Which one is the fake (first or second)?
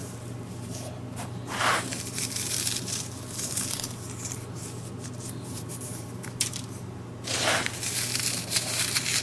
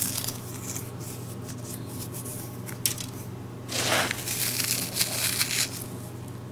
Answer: first